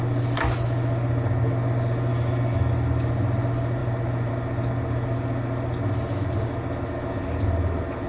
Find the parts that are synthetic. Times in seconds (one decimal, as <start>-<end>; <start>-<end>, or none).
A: 2.1-2.7